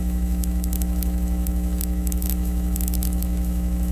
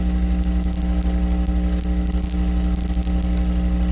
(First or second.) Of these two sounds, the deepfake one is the first